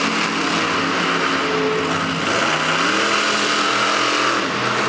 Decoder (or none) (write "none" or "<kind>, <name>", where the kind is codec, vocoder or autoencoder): none